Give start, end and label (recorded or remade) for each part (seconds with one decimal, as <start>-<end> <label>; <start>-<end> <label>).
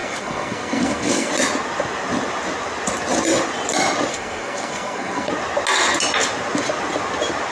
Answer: 0.0-1.3 remade; 1.3-4.1 recorded; 4.1-5.3 remade; 5.3-7.5 recorded